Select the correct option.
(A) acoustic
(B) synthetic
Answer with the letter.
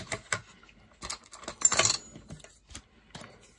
A